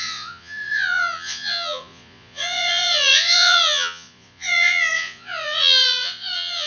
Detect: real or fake fake